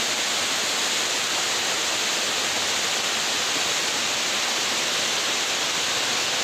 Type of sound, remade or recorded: recorded